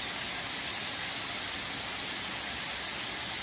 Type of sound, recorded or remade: recorded